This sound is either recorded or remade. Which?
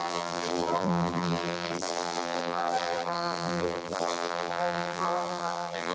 remade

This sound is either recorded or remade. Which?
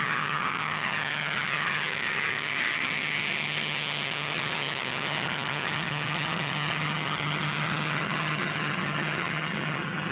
remade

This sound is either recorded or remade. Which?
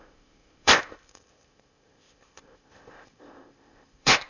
remade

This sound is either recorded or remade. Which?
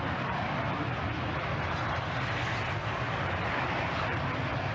recorded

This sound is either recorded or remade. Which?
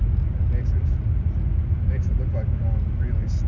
recorded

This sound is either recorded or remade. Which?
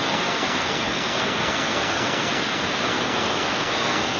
remade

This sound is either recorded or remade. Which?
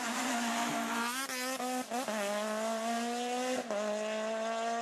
recorded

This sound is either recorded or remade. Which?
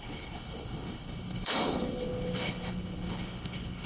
remade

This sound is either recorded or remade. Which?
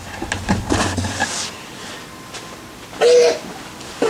recorded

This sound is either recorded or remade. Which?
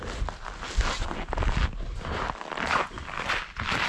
recorded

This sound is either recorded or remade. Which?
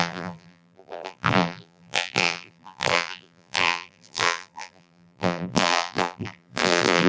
remade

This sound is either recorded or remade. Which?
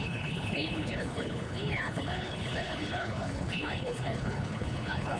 remade